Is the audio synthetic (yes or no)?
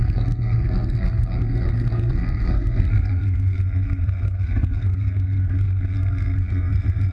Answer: yes